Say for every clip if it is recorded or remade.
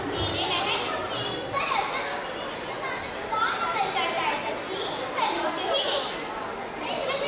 recorded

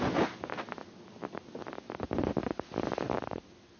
recorded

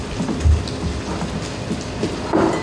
recorded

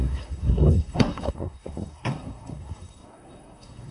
remade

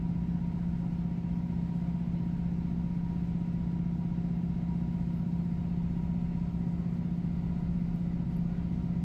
recorded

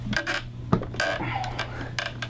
recorded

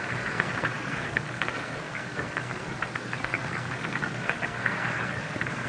remade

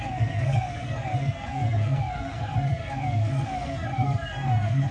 remade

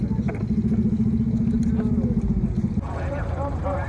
recorded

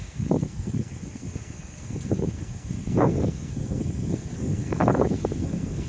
remade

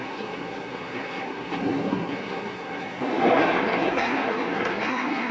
remade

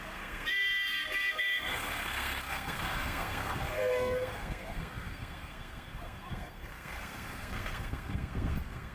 remade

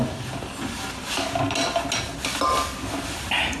recorded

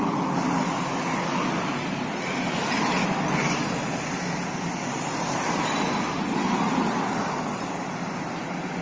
recorded